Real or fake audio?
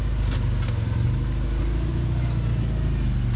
real